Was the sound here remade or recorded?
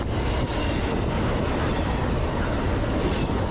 recorded